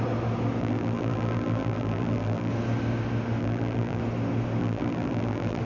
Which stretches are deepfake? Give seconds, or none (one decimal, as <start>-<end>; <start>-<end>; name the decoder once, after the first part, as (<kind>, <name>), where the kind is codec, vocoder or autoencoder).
0.6-2.5 (vocoder, BigVGAN v2); 3.4-4.0; 4.6-5.6